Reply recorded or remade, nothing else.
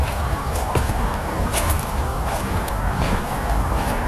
remade